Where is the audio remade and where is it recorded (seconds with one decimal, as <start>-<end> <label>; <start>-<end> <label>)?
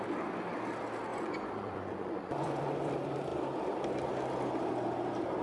0.0-1.1 recorded; 1.1-2.6 remade; 2.6-5.4 recorded